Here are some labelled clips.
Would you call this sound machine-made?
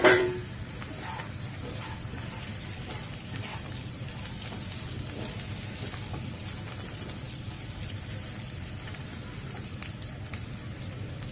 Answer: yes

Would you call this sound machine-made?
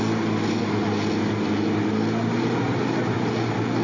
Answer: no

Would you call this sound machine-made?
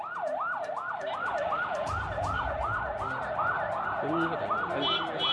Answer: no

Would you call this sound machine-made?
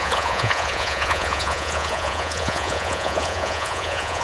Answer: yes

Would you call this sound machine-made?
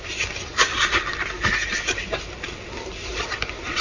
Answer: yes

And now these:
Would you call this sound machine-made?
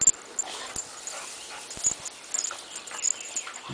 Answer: no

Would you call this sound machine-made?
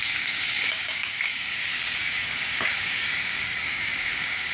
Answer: yes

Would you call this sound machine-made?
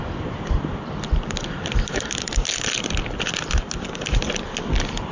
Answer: no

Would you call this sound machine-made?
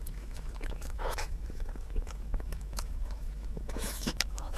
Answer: yes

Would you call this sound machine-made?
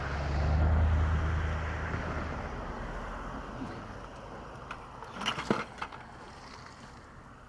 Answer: no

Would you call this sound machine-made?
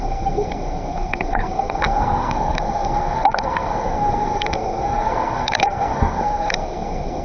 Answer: yes